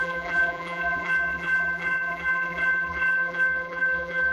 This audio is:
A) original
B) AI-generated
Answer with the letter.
B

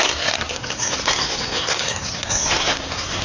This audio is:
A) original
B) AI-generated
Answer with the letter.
B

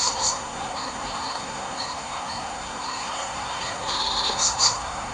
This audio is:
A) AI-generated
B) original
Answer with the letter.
A